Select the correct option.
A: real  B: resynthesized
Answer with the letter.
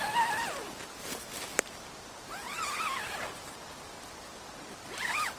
A